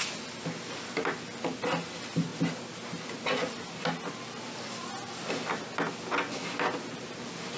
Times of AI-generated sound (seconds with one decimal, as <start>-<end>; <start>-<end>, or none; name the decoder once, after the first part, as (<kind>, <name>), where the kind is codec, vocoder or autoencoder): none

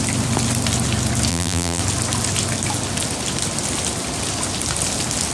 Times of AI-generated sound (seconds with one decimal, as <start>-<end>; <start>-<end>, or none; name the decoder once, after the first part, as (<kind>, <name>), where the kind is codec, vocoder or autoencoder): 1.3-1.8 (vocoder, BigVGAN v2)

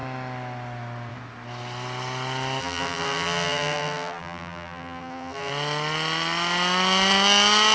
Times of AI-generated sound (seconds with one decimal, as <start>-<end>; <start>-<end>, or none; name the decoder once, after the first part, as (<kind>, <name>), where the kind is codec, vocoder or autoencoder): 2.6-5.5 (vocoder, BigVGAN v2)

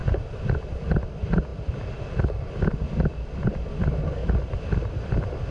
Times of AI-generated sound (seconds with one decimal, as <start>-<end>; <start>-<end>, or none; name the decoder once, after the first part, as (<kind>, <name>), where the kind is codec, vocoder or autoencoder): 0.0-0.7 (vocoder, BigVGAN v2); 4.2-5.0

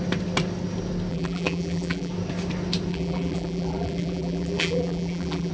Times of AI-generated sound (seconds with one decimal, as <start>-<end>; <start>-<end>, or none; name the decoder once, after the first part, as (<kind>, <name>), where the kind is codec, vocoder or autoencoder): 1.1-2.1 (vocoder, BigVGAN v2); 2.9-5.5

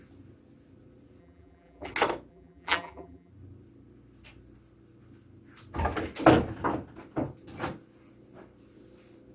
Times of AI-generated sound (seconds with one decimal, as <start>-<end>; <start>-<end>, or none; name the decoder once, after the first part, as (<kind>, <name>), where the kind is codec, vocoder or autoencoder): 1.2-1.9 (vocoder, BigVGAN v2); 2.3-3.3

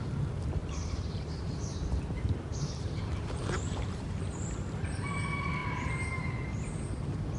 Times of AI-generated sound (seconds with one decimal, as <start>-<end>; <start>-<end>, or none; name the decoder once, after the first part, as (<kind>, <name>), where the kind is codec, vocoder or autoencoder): 0.6-4.2 (vocoder, BigVGAN v2); 5.6-6.3